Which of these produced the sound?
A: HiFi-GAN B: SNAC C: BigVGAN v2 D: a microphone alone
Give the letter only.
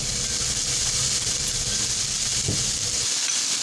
D